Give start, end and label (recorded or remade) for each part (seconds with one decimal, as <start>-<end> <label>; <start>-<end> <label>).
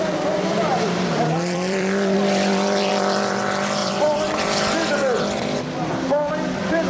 0.0-0.7 recorded; 0.7-2.9 remade; 2.9-3.8 recorded; 3.8-4.9 remade; 4.9-6.9 recorded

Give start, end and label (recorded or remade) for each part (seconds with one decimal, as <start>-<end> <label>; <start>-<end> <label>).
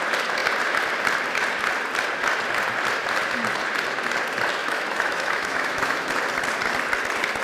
0.0-4.6 recorded; 4.6-6.1 remade; 6.1-7.4 recorded